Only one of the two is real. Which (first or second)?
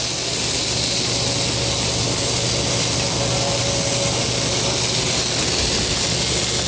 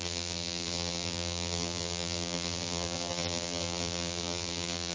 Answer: first